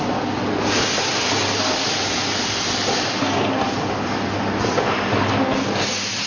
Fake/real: real